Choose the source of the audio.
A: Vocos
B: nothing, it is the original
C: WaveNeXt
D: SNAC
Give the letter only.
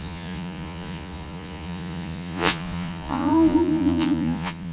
A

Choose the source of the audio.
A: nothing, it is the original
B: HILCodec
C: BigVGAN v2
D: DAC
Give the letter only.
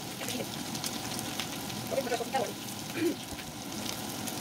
A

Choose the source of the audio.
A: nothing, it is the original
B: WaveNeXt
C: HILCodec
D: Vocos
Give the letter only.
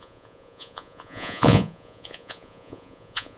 D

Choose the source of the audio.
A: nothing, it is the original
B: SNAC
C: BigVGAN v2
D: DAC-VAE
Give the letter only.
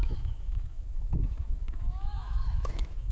D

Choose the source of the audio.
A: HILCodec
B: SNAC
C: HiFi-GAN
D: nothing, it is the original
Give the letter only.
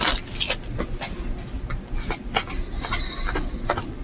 D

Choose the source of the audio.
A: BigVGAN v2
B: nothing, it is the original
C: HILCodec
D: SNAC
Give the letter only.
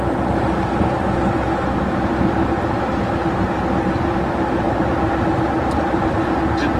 B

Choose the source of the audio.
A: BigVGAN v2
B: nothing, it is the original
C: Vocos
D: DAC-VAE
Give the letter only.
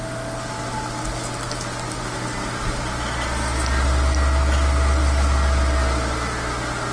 B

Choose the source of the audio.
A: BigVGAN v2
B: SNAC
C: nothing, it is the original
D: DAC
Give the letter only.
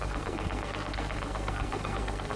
B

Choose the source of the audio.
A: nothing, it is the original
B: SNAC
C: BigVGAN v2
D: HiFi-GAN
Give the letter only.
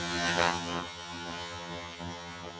D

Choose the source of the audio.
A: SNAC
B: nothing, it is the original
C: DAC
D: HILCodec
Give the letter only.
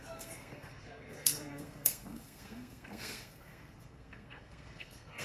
A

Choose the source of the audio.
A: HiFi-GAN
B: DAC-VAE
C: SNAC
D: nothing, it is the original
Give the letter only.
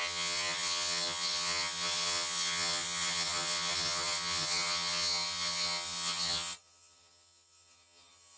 A